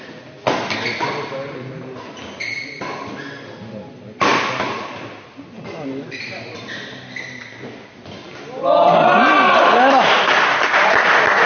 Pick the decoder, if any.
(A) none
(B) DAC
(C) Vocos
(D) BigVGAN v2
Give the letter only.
A